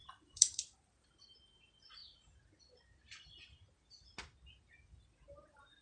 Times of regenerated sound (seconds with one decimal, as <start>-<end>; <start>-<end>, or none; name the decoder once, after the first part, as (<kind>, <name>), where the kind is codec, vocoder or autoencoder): 0.0-1.1 (vocoder, BigVGAN v2)